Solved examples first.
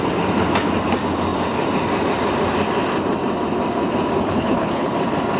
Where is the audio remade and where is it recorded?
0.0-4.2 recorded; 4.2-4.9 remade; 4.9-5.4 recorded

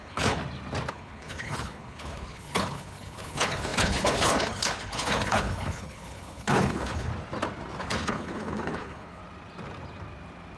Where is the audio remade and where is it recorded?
0.0-0.4 remade; 0.4-0.9 recorded; 0.9-7.1 remade; 7.1-7.8 recorded; 7.8-9.2 remade; 9.2-10.6 recorded

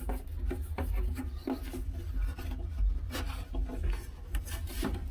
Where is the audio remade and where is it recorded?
0.0-0.6 remade; 0.6-2.6 recorded; 2.6-5.1 remade